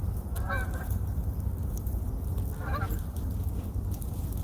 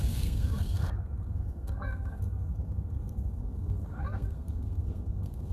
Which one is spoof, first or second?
second